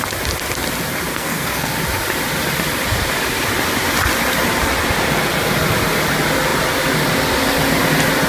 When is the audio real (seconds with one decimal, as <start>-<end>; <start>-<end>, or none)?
0.0-1.1; 1.7-8.3